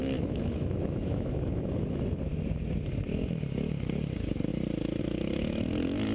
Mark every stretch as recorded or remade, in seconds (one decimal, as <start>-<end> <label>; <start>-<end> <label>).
0.0-2.0 remade; 2.0-6.1 recorded